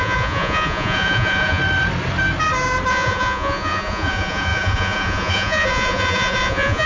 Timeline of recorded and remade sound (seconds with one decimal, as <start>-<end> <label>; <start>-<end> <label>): 0.0-1.6 remade; 1.6-2.9 recorded; 2.9-6.9 remade